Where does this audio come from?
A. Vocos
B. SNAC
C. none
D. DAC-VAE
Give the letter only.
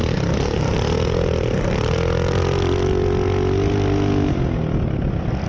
C